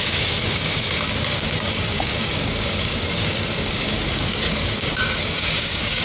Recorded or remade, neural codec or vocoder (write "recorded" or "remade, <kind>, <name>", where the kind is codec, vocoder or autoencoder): remade, codec, DAC